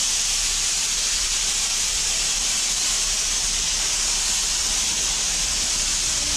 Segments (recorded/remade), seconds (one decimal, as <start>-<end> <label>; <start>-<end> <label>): 0.0-2.6 remade; 2.6-6.4 recorded